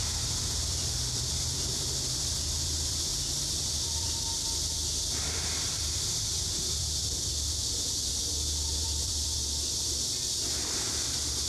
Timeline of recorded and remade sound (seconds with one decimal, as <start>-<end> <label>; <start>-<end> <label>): 0.0-11.5 remade